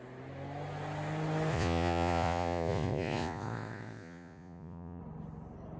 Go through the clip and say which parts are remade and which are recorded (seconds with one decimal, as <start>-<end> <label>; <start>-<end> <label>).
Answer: 0.0-1.5 recorded; 1.5-5.0 remade; 5.0-5.8 recorded